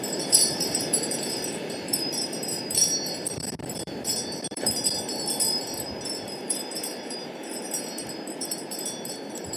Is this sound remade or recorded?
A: remade